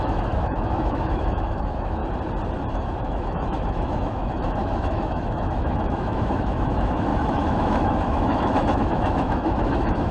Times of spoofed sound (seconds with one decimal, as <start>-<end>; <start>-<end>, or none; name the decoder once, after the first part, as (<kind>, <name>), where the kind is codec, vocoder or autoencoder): 0.0-2.0 (autoencoder, DAC-VAE); 2.7-10.1

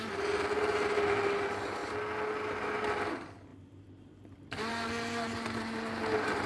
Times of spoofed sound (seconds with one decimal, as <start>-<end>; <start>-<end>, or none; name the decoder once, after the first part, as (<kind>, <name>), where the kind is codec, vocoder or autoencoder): none